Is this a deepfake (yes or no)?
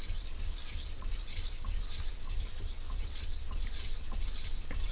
no